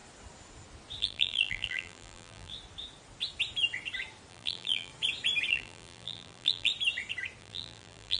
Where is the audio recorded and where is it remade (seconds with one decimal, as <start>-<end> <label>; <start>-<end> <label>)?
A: 0.0-1.0 recorded; 1.0-2.5 remade; 2.5-4.3 recorded; 4.3-4.9 remade; 4.9-5.5 recorded; 5.5-6.7 remade; 6.7-7.4 recorded; 7.4-8.2 remade

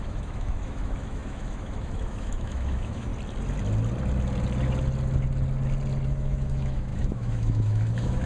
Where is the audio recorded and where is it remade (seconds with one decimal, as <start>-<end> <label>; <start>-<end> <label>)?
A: 0.0-3.1 remade; 3.1-6.1 recorded; 6.1-8.3 remade

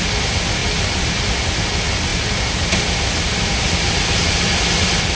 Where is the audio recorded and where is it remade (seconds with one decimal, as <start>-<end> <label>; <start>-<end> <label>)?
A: 0.0-0.6 recorded; 0.6-1.4 remade; 1.4-5.1 recorded

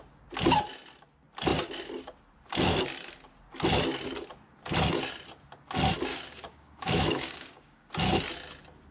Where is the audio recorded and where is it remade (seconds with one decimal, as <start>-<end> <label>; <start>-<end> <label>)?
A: 0.0-6.1 recorded; 6.1-7.9 remade; 7.9-8.9 recorded